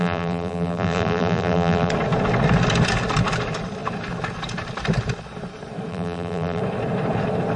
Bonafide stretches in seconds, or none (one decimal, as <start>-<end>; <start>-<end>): 1.9-5.9; 6.6-7.6